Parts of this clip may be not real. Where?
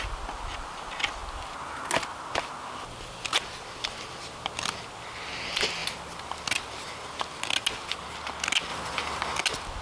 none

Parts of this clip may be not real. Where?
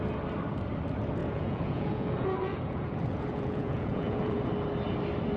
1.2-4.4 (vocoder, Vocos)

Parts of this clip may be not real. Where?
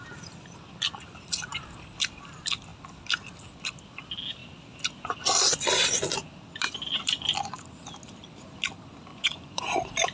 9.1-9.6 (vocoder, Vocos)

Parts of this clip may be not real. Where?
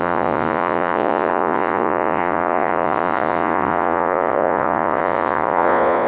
0.0-6.1 (vocoder, Vocos)